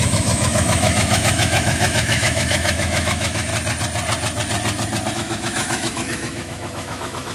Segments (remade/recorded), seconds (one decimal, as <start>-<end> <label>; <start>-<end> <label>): 0.0-3.5 remade; 3.5-5.1 recorded; 5.1-7.3 remade